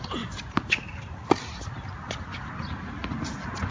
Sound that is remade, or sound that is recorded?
recorded